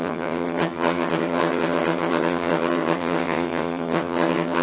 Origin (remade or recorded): remade